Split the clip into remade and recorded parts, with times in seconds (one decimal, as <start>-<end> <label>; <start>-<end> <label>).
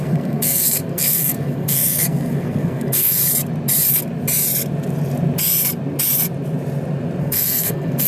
0.0-3.2 remade; 3.2-7.2 recorded; 7.2-8.1 remade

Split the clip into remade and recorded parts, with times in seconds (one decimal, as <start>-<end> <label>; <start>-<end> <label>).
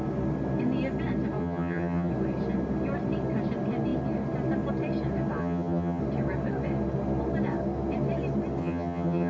0.0-1.4 recorded; 1.4-2.1 remade; 2.1-5.4 recorded; 5.4-6.0 remade; 6.0-8.6 recorded; 8.6-9.3 remade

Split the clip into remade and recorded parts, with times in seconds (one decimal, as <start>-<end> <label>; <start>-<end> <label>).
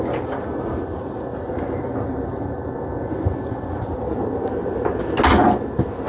0.0-1.3 recorded; 1.3-2.7 remade; 2.7-6.1 recorded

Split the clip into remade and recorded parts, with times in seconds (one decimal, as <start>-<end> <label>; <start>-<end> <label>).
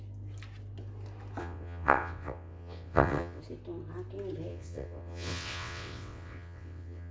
0.0-1.4 recorded; 1.4-3.4 remade; 3.4-4.5 recorded; 4.5-7.1 remade